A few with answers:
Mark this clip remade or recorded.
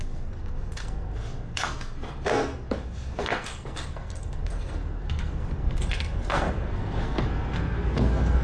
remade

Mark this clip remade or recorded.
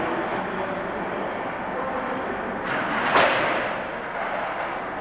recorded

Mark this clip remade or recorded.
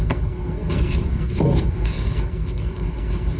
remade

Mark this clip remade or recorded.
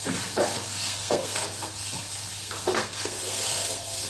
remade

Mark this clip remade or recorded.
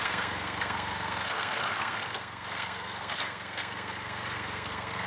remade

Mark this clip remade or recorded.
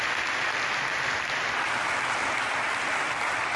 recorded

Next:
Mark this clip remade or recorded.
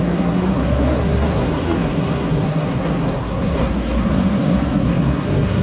remade